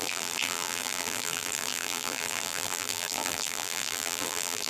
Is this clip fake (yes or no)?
yes